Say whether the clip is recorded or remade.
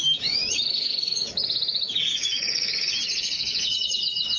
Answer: remade